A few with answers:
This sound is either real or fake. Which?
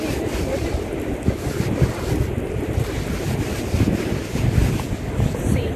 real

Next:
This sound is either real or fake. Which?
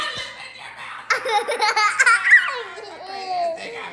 real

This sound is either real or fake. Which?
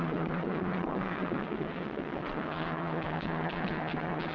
fake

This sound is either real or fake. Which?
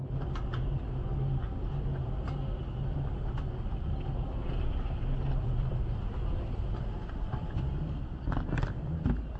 real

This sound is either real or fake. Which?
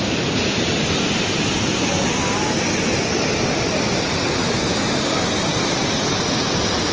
real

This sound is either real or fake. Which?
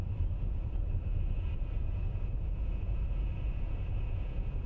fake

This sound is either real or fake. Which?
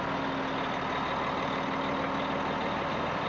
real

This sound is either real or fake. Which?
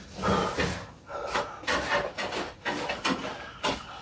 real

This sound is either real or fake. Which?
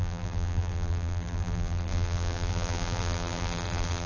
fake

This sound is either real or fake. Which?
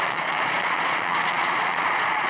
fake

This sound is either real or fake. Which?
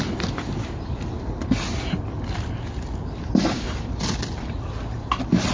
real